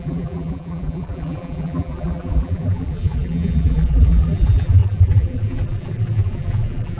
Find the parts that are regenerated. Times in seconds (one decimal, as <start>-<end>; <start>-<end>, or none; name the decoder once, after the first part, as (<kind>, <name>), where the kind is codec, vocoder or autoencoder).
0.0-7.0 (vocoder, BigVGAN v2)